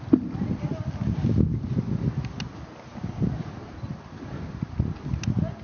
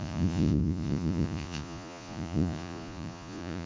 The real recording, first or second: first